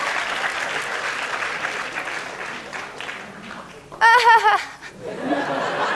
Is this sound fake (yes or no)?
no